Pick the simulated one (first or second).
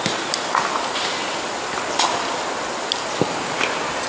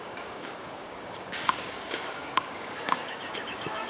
second